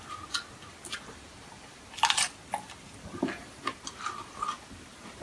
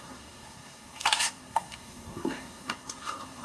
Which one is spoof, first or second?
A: second